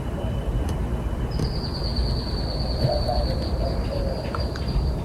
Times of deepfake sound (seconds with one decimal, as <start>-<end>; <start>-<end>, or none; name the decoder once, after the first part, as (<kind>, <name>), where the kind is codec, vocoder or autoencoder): 0.0-1.9 (vocoder, BigVGAN v2)